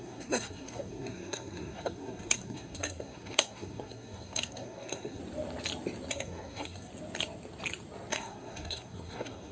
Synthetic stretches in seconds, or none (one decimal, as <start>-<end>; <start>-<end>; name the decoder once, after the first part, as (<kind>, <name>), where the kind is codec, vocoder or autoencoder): 0.0-5.2 (codec, SNAC); 6.1-6.9; 8.1-9.5